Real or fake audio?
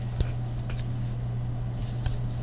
real